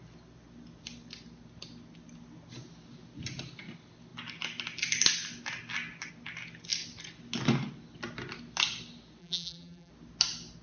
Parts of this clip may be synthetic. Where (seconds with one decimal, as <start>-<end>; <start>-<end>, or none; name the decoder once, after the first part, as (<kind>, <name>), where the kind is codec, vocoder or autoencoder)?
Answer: 9.2-9.9 (vocoder, BigVGAN v2)